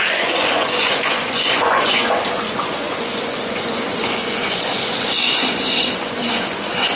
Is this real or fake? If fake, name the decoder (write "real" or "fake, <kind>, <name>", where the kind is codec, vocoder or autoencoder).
fake, vocoder, Vocos